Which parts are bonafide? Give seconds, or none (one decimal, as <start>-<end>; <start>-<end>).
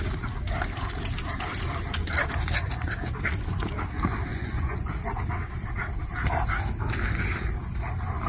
0.0-4.3; 4.9-8.3